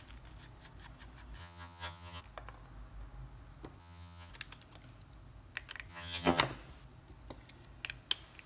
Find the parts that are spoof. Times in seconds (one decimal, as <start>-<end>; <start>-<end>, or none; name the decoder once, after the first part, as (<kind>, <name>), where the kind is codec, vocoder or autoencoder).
1.4-2.2 (vocoder, HiFi-GAN); 3.8-4.3; 5.9-6.4